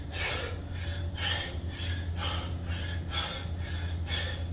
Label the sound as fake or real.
real